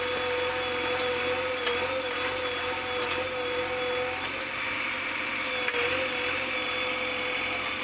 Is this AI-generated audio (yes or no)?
no